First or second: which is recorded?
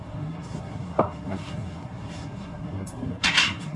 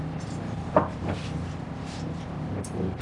second